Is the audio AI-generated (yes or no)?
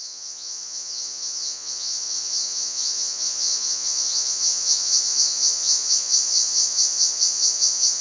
yes